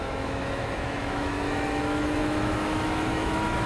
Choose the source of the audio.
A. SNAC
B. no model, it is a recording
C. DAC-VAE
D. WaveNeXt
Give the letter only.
C